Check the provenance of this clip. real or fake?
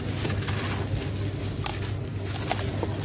real